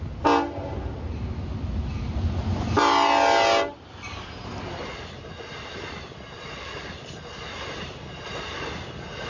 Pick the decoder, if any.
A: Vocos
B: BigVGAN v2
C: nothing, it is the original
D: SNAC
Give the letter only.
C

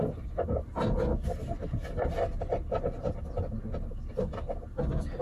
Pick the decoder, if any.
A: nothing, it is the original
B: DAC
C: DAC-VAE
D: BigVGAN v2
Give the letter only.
A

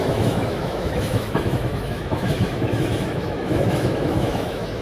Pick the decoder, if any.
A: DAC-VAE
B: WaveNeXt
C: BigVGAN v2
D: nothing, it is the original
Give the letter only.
A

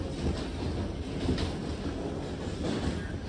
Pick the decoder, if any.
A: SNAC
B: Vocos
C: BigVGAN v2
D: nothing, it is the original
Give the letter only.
D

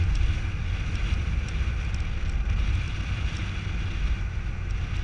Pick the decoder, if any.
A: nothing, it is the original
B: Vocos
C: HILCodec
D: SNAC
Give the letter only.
A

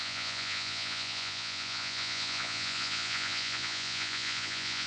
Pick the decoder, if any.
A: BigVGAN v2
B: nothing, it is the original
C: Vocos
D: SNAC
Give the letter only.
C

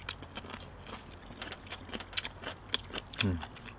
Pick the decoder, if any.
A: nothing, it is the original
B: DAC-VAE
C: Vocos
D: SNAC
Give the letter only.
A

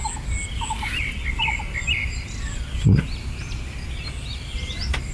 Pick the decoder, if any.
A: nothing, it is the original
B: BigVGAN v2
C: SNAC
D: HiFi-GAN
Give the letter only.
A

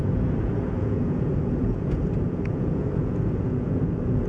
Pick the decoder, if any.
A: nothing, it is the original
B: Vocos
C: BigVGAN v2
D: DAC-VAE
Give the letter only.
B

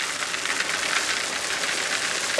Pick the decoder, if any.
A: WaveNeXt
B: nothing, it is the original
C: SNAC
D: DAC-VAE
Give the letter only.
B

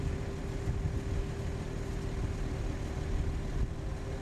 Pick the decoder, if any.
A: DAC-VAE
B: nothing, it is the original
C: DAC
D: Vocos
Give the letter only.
B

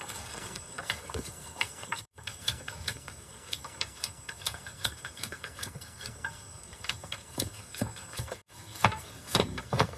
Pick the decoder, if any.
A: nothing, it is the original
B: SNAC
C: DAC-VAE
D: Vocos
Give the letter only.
B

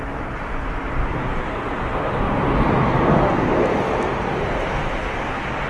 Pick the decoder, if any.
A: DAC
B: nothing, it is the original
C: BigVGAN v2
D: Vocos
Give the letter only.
B